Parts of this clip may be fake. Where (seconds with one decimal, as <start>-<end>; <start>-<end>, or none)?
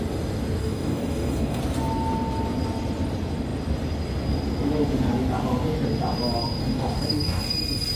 0.6-1.6; 6.6-7.4